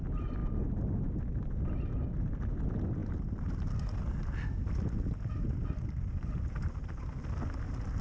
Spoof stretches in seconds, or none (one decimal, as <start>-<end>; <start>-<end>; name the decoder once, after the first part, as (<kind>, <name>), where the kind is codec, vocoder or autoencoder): none